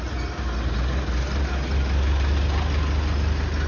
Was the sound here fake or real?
real